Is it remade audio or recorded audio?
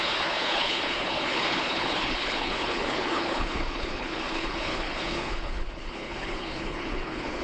remade